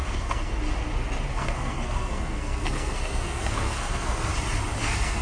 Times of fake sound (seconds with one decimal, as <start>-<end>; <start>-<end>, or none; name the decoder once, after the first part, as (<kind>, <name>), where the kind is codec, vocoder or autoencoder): 0.0-0.5 (codec, SNAC); 1.3-4.3; 4.8-5.2